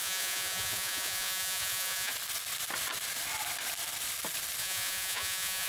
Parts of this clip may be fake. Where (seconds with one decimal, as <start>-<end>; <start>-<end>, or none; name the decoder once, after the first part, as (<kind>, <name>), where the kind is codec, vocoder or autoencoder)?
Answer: 0.0-2.1 (vocoder, Vocos); 4.6-5.7